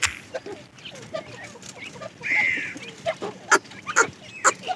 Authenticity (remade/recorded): recorded